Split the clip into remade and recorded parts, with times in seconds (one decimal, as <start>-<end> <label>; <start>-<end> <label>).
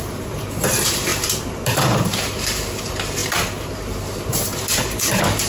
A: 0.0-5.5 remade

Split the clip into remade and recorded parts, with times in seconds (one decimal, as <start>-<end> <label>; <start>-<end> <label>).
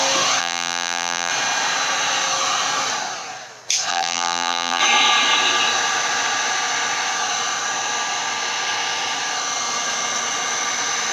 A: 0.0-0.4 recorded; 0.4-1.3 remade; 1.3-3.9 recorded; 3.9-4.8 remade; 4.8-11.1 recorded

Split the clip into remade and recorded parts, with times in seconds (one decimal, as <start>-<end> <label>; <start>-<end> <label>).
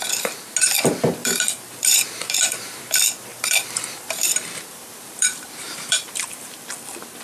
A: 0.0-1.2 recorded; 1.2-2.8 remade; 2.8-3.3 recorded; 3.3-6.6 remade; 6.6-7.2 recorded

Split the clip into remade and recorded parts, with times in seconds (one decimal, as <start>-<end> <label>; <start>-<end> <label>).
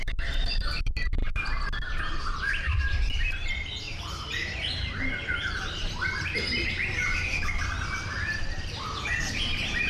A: 0.0-5.8 remade; 5.8-6.7 recorded; 6.7-9.9 remade